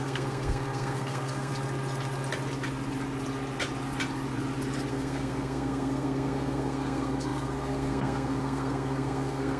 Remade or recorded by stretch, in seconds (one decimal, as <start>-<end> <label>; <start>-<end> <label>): 0.0-1.5 remade; 1.5-4.9 recorded; 4.9-9.6 remade